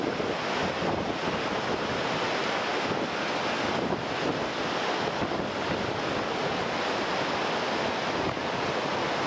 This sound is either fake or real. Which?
real